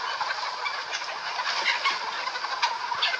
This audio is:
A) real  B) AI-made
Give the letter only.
A